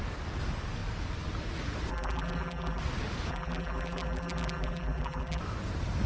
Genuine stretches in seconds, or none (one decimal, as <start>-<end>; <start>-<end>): 0.0-1.9; 2.8-3.3; 5.4-6.1